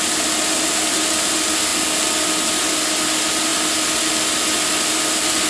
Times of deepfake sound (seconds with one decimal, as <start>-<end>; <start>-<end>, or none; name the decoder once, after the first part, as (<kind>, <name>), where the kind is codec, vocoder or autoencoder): none